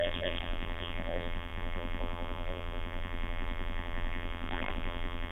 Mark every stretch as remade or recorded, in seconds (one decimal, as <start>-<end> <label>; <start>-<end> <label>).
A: 0.0-5.3 remade